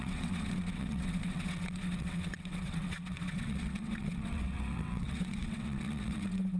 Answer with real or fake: fake